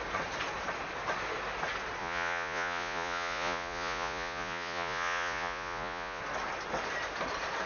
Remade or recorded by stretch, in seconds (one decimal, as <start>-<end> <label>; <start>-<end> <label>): 0.0-2.0 recorded; 2.0-6.2 remade; 6.2-7.7 recorded